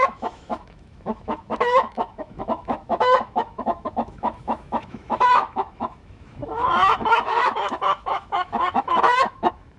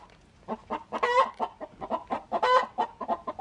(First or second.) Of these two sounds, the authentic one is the second